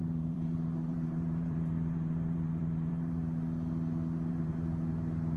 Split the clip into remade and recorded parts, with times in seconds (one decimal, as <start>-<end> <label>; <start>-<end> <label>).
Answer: 0.0-3.2 remade; 3.2-4.3 recorded; 4.3-5.4 remade